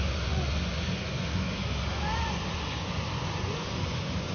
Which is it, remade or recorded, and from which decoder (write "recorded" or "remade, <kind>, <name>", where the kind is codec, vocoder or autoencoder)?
remade, vocoder, Vocos